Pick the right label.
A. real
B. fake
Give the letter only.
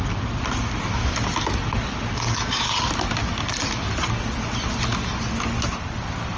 A